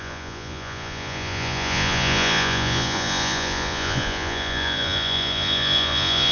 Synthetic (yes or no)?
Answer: yes